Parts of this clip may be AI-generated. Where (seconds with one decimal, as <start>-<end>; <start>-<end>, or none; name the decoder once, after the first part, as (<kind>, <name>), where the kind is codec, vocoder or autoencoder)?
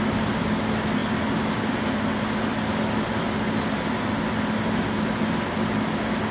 none